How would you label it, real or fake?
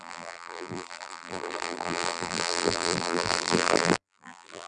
fake